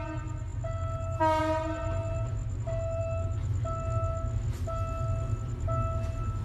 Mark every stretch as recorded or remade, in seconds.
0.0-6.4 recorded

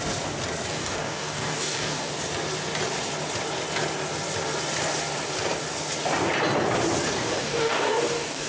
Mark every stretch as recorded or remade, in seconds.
0.0-0.7 recorded; 0.7-2.1 remade; 2.1-7.2 recorded; 7.2-8.5 remade